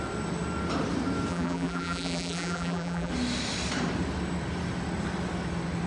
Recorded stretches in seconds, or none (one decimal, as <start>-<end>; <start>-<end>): 0.0-1.3; 3.1-5.9